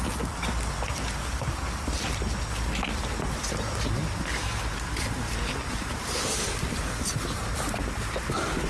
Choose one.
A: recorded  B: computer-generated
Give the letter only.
A